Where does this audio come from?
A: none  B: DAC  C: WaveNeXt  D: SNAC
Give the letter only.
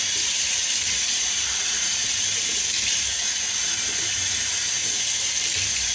A